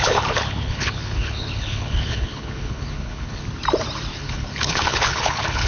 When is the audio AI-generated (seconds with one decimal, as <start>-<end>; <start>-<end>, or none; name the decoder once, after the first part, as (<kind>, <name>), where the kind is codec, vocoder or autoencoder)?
0.0-3.4 (codec, HILCodec); 4.1-5.7